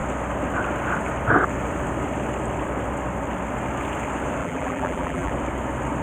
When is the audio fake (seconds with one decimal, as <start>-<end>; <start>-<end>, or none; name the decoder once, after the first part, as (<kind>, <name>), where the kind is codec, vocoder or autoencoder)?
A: 4.4-5.3 (vocoder, BigVGAN v2)